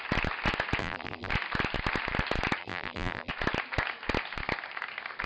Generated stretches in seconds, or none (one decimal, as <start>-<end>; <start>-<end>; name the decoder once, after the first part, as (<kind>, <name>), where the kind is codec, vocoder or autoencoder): 0.8-1.3 (vocoder, BigVGAN v2); 2.6-3.3